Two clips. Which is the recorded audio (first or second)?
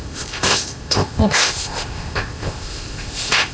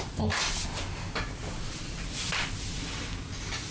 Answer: second